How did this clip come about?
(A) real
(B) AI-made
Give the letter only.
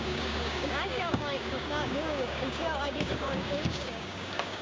B